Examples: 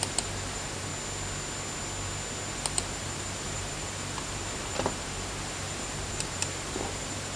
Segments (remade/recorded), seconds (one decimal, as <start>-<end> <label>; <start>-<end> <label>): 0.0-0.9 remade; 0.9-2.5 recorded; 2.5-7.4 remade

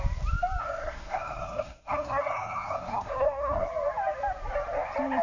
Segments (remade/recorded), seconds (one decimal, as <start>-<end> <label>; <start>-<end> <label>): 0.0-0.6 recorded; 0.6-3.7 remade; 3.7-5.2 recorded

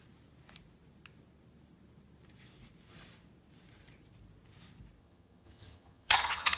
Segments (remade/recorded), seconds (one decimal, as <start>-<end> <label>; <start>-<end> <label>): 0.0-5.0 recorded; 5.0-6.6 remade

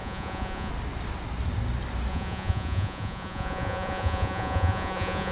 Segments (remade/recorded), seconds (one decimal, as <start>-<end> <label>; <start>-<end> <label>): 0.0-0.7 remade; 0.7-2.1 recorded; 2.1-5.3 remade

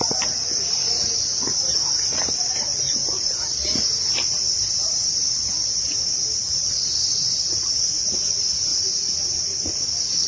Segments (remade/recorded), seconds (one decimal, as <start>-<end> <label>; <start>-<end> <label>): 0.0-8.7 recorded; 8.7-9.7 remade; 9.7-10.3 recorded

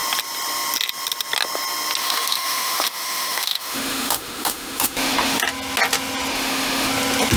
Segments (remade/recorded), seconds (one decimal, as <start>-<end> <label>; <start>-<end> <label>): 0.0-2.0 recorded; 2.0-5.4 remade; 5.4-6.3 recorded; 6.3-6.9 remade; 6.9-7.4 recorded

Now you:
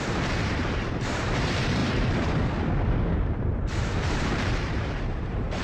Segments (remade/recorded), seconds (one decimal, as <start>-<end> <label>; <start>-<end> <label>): 0.0-5.6 remade